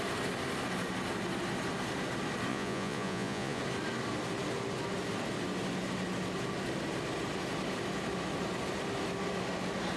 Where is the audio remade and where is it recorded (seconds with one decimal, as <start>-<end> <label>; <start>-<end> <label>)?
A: 0.0-2.5 recorded; 2.5-3.6 remade; 3.6-10.0 recorded